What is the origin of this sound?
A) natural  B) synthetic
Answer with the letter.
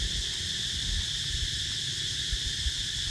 A